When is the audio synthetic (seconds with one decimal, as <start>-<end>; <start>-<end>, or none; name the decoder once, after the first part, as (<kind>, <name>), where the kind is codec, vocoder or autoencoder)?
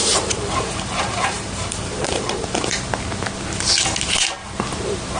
0.0-2.9 (vocoder, BigVGAN v2)